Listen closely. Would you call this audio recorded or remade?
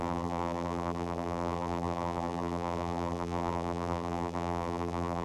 remade